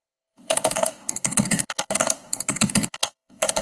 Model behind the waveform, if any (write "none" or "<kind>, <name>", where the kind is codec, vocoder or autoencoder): codec, DAC